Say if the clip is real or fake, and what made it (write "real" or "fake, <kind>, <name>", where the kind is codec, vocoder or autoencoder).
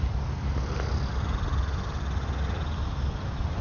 real